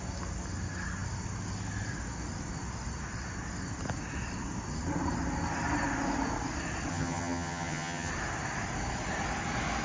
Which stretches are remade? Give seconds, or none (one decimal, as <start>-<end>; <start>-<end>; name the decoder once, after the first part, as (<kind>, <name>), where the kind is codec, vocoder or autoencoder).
6.9-8.1 (vocoder, HiFi-GAN)